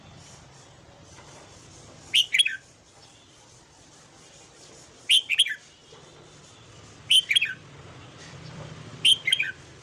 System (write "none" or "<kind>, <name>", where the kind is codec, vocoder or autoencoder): vocoder, BigVGAN v2